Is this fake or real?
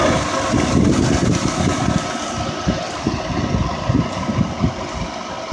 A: real